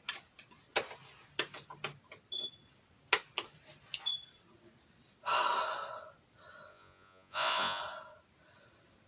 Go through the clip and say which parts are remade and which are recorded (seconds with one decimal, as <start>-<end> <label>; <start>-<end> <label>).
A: 0.0-6.7 recorded; 6.7-7.8 remade; 7.8-9.1 recorded